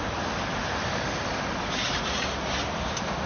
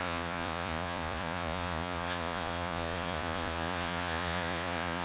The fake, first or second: second